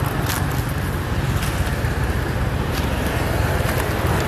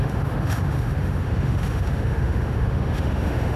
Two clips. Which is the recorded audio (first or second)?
first